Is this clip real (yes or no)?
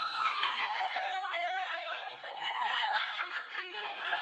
no